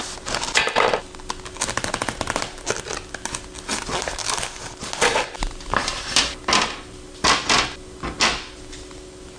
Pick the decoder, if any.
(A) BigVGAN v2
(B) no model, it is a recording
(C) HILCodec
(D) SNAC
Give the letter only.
B